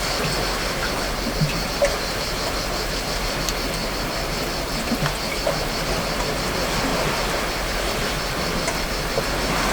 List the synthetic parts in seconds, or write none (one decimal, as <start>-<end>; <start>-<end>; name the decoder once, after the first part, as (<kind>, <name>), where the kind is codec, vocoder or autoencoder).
0.8-1.9 (vocoder, BigVGAN v2); 3.8-5.0; 6.9-9.2